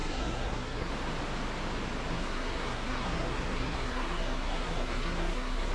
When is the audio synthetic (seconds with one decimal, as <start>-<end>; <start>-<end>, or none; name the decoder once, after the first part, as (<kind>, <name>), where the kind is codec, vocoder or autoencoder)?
0.0-0.9 (codec, SNAC); 2.1-5.7

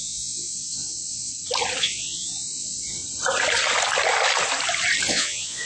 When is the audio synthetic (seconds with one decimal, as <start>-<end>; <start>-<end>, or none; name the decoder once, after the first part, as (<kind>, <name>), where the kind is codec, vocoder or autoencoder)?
0.0-1.3 (vocoder, Vocos); 1.8-3.0; 5.1-5.7